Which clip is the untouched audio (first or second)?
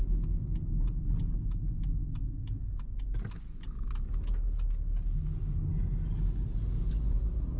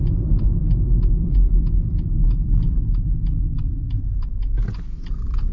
first